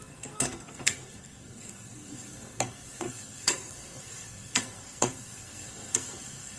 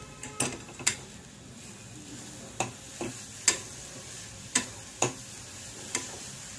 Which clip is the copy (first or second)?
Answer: first